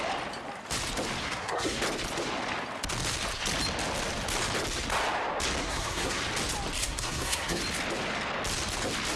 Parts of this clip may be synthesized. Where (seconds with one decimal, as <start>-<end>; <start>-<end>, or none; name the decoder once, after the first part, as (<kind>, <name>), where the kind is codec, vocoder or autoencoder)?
1.2-1.8 (codec, SNAC); 5.6-6.2; 6.8-7.6